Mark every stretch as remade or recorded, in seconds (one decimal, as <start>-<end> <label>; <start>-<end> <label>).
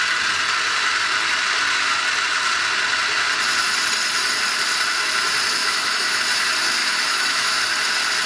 0.0-5.6 recorded; 5.6-6.2 remade; 6.2-6.8 recorded; 6.8-7.6 remade; 7.6-8.3 recorded